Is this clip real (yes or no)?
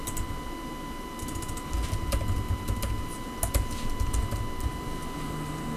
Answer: yes